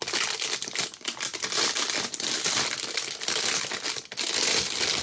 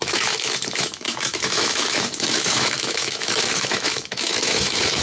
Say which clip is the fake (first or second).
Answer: second